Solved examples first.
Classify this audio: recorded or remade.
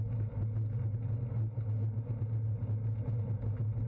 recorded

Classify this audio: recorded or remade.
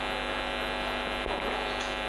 recorded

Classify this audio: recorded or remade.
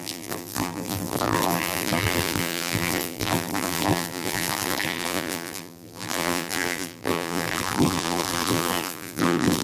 remade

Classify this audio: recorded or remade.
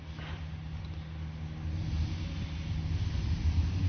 recorded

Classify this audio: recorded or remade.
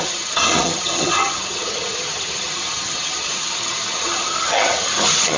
remade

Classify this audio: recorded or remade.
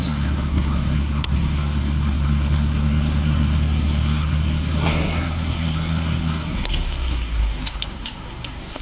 remade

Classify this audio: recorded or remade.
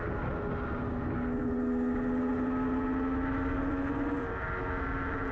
recorded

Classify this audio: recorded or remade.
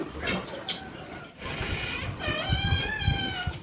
recorded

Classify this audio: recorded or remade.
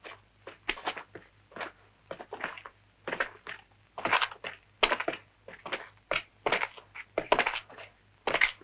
recorded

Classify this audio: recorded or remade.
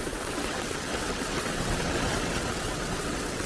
remade